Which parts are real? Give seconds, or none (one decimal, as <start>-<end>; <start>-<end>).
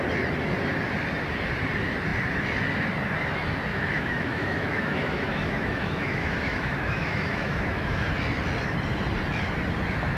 0.0-3.7; 8.1-10.2